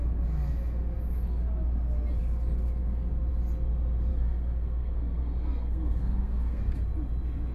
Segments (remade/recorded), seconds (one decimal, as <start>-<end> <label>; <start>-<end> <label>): 0.0-4.1 recorded; 4.1-6.6 remade; 6.6-7.5 recorded